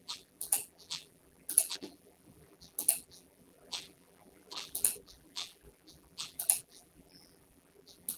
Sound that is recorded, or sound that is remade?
remade